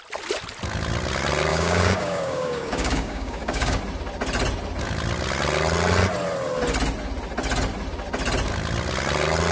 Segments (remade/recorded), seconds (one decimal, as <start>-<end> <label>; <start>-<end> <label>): 0.0-1.5 recorded; 1.5-3.8 remade; 3.8-9.5 recorded